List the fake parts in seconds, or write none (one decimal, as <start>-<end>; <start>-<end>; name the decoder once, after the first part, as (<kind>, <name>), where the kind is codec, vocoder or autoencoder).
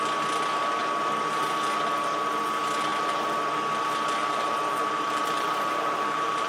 2.9-3.5 (vocoder, BigVGAN v2); 4.2-6.5